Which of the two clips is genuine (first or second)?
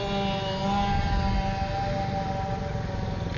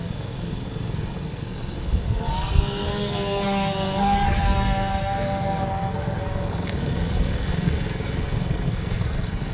first